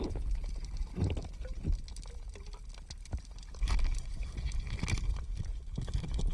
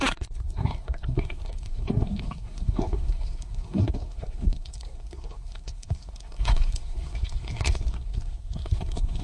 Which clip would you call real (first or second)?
first